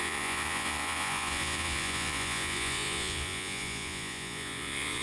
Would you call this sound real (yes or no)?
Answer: no